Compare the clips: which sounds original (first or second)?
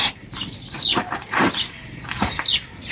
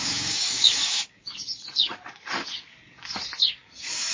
first